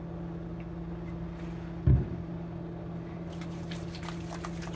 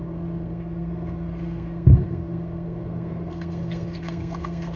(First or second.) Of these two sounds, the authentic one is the first